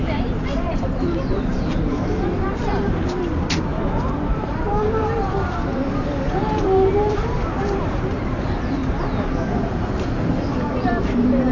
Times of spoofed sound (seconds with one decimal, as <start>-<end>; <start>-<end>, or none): 0.0-8.8; 9.5-11.5